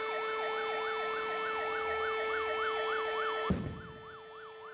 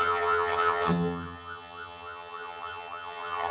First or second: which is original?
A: first